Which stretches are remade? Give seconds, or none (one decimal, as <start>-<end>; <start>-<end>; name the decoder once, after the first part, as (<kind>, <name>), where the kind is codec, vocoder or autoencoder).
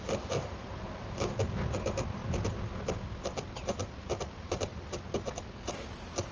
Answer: none